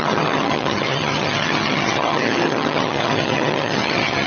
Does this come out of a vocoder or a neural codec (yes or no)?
yes